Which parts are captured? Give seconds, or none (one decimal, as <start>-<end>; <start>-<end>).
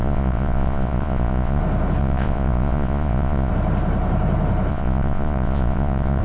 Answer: 1.6-2.0; 3.5-4.7